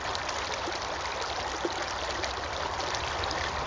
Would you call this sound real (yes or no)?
yes